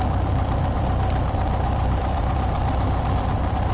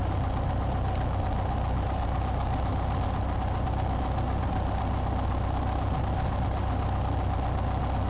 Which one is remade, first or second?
first